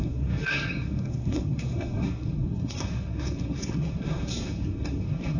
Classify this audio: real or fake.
fake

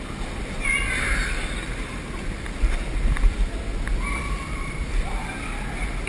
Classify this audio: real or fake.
real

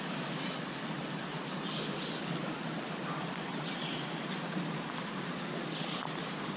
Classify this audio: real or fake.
real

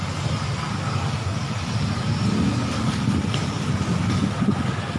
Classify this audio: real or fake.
real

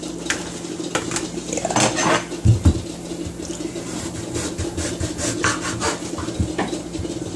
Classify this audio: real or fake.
real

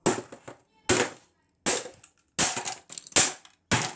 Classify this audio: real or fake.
real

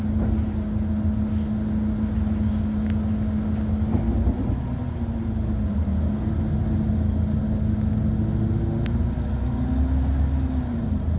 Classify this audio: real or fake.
real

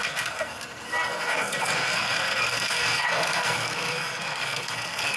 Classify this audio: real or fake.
fake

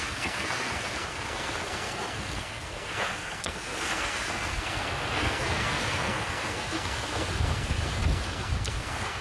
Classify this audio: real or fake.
fake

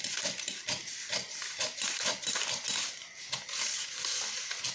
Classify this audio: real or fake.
real